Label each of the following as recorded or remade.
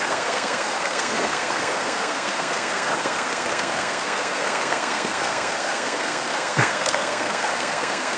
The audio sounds remade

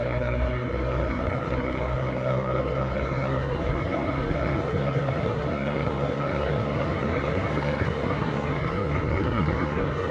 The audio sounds remade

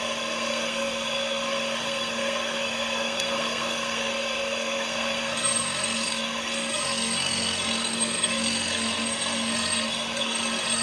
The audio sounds remade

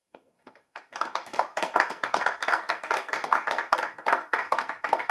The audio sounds remade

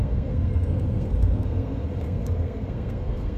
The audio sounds remade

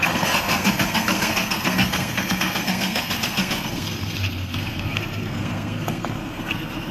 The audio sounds remade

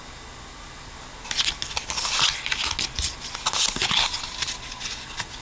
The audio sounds recorded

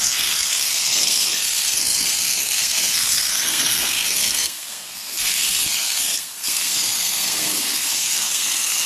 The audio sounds remade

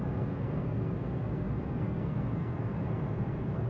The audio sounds remade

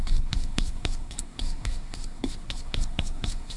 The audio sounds remade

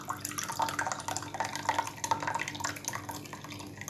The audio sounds recorded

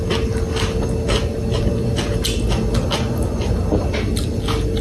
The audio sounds recorded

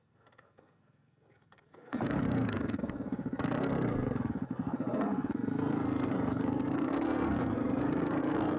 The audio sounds remade